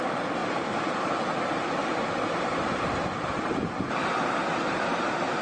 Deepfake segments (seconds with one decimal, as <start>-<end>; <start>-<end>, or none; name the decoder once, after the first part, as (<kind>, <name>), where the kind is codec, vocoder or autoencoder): 0.4-1.0 (vocoder, BigVGAN v2); 1.8-5.0